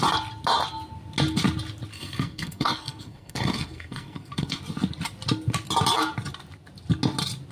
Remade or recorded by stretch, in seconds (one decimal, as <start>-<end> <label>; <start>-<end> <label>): 0.0-1.9 recorded; 1.9-4.6 remade; 4.6-7.5 recorded